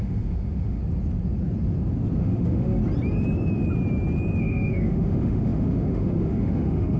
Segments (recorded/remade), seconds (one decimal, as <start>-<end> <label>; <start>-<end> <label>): 0.0-0.8 remade; 0.8-2.2 recorded; 2.2-2.8 remade; 2.8-4.4 recorded; 4.4-7.0 remade